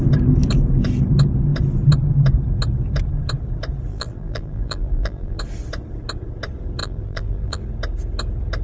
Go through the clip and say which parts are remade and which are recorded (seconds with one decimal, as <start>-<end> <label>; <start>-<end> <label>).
0.0-3.9 recorded; 3.9-5.4 remade; 5.4-6.8 recorded; 6.8-7.6 remade; 7.6-8.6 recorded